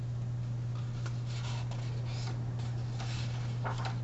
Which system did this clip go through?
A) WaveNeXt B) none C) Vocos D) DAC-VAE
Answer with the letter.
B